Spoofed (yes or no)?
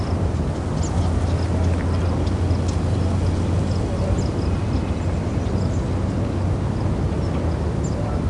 no